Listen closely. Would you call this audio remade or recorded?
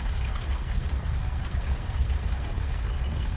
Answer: remade